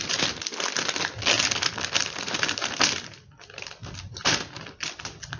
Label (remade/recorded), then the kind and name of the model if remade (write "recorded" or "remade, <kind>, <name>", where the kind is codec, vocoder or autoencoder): recorded